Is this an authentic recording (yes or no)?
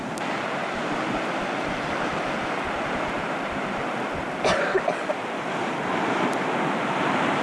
no